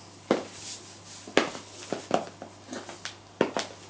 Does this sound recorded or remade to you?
recorded